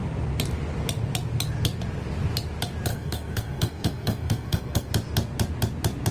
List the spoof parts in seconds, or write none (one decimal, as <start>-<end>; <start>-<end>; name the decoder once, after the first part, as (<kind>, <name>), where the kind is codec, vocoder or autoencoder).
2.9-4.9 (codec, SNAC)